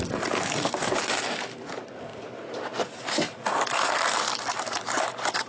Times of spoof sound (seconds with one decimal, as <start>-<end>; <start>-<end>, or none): 0.0-5.5